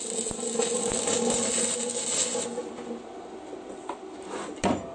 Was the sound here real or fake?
real